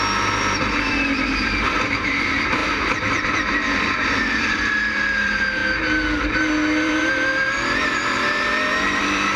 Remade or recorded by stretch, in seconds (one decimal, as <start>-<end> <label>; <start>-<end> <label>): 0.0-5.6 remade; 5.6-6.3 recorded; 6.3-9.4 remade